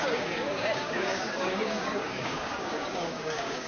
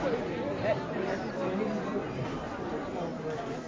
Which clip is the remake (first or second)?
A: first